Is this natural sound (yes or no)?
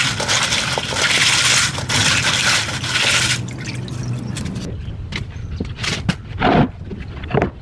yes